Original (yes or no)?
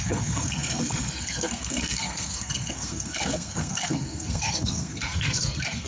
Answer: no